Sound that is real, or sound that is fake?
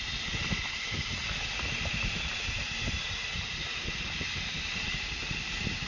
real